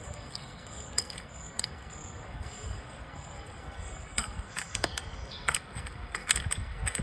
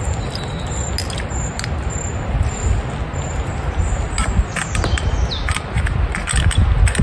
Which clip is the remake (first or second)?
first